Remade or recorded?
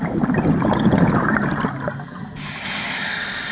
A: recorded